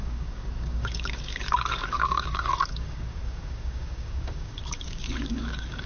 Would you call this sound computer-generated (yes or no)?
yes